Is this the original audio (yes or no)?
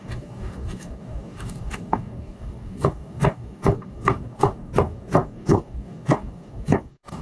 no